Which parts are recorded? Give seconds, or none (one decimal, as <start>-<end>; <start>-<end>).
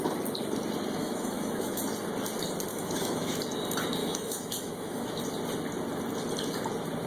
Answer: 0.0-1.0; 1.8-2.7; 3.4-4.0; 5.2-7.1